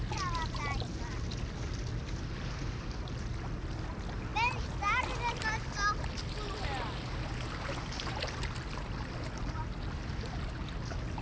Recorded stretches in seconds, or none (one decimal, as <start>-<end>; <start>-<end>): 0.0-11.2